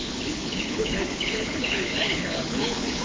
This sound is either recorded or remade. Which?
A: remade